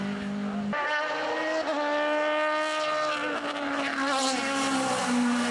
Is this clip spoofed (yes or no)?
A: no